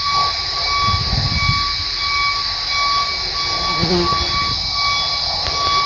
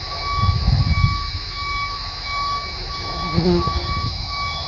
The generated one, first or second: second